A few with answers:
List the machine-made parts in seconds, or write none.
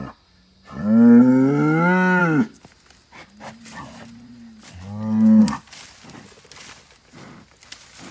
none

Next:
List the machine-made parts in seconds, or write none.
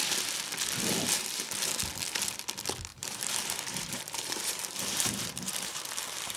2.9-5.8 (vocoder, BigVGAN v2)